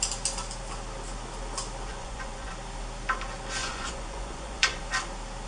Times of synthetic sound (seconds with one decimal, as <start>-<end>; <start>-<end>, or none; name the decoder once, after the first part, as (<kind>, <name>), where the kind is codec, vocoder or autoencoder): 1.9-2.5 (vocoder, Vocos); 3.6-4.8